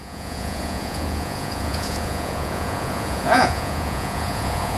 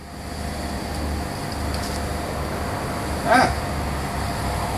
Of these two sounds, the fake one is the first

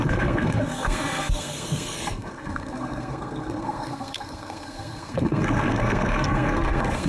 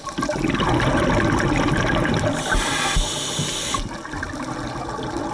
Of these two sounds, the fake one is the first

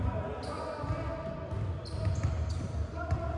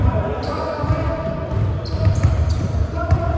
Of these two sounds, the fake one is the second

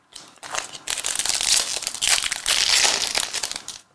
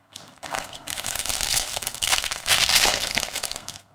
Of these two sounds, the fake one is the second